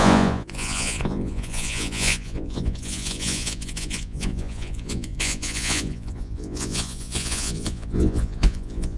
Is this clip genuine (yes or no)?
no